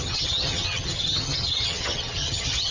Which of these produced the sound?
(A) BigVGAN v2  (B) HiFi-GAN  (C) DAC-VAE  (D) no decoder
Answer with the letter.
B